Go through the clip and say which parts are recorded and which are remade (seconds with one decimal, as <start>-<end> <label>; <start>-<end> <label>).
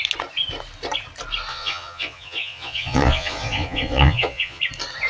0.0-1.5 recorded; 1.5-4.6 remade; 4.6-5.1 recorded